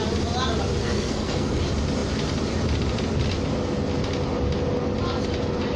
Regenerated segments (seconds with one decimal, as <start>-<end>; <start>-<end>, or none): 0.8-1.6

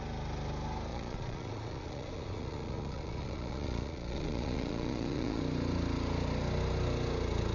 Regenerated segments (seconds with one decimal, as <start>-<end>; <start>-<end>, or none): 0.9-5.4

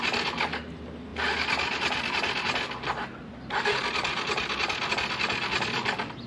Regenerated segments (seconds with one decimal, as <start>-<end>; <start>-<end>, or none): none

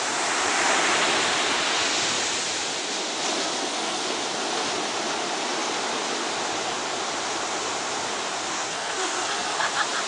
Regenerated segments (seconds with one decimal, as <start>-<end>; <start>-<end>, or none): 3.4-4.0; 8.5-9.7

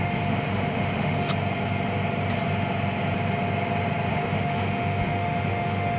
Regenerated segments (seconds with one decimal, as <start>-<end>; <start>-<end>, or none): 0.0-1.3; 4.1-6.0

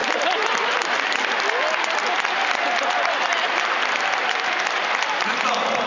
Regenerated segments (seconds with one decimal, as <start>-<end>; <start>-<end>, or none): none

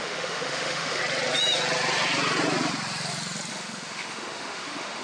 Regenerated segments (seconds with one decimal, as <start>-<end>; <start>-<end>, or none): 0.0-1.0; 3.5-5.0